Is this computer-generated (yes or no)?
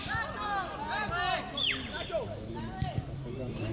no